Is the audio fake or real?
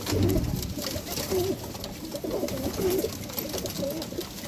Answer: real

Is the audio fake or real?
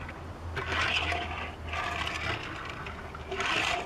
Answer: real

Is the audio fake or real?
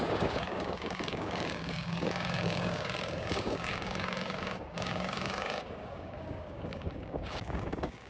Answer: fake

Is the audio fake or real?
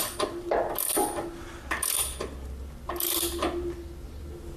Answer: real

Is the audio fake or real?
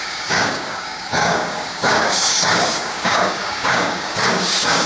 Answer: fake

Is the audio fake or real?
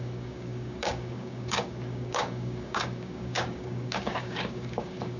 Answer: fake